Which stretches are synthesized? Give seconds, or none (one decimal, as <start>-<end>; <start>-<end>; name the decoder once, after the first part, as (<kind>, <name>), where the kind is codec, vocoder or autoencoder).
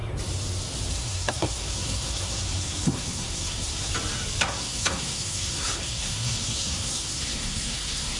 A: 0.9-3.9 (codec, SNAC); 4.4-8.2